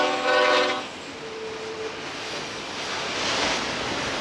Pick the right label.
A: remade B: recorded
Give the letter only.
B